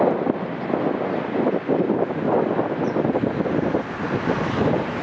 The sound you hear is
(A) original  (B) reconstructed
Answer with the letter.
A